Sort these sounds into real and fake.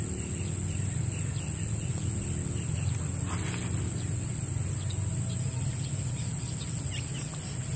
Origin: real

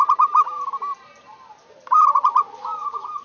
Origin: real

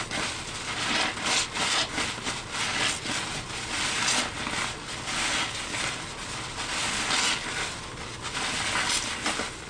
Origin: real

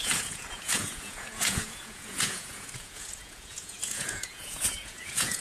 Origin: fake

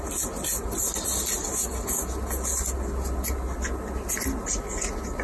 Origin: real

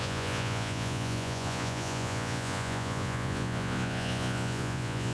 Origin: fake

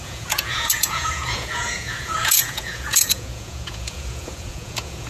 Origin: fake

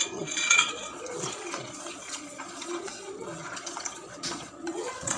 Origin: fake